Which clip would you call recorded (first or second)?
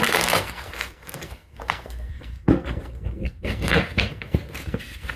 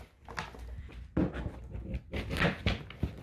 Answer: second